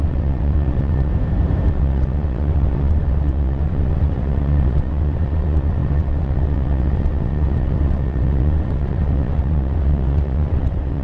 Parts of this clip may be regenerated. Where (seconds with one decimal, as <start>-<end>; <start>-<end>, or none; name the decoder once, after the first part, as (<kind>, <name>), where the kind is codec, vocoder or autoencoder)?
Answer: 0.0-1.1 (vocoder, WaveNeXt); 1.7-11.0